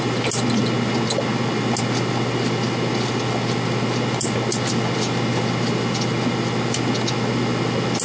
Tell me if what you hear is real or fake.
real